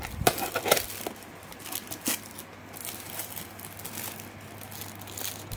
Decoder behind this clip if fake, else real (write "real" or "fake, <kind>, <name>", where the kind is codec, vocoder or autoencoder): real